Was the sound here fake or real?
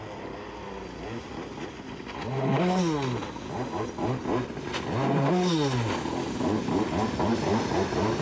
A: real